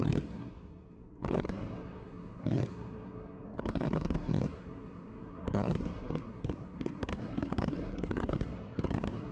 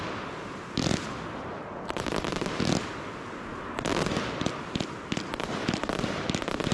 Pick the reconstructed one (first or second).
first